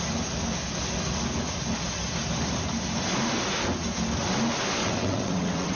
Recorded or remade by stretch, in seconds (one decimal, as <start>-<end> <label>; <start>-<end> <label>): 0.0-4.8 recorded; 4.8-5.8 remade